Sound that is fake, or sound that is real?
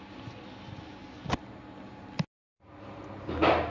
real